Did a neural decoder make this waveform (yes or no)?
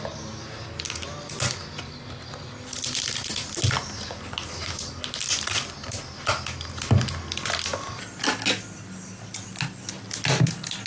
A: no